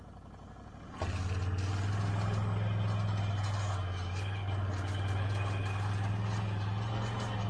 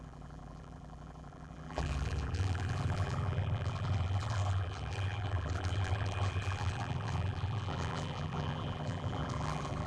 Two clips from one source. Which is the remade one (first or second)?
second